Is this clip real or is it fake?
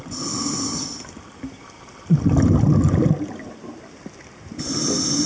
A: real